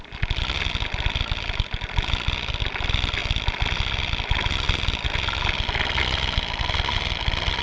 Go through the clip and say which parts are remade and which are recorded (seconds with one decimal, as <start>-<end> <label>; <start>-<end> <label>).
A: 0.0-7.6 recorded